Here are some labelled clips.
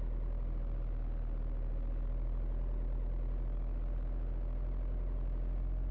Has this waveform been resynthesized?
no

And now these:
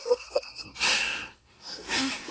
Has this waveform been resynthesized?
yes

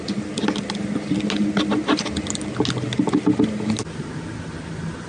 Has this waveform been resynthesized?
no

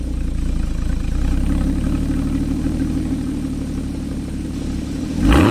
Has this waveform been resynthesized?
no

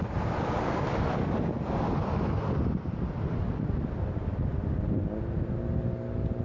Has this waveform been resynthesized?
no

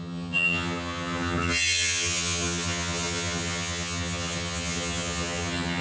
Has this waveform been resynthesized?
yes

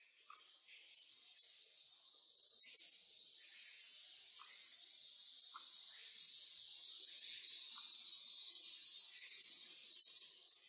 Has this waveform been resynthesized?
yes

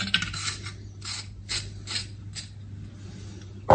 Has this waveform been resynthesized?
no